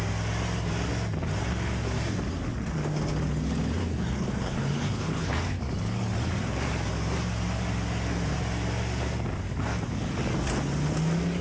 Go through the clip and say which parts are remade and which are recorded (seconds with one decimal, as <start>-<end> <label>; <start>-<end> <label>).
0.0-3.8 recorded; 3.8-5.6 remade; 5.6-11.4 recorded